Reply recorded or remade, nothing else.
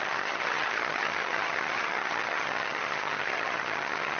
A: remade